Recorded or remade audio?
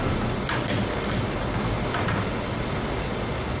recorded